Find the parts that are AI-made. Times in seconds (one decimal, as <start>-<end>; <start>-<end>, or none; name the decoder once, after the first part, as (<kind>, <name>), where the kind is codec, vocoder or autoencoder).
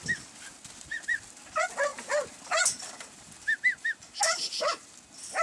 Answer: none